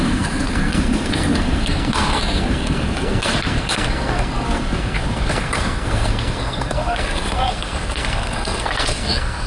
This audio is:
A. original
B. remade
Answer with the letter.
B